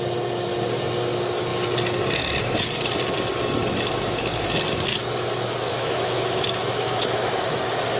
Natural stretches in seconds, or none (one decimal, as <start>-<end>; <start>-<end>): 0.0-4.9; 7.6-8.0

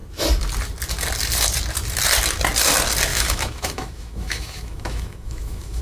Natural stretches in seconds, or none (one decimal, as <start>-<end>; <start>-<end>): 0.0-3.1